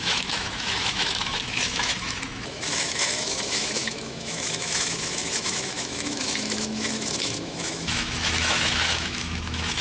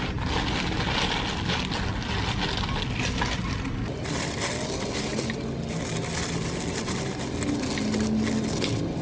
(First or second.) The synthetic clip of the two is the first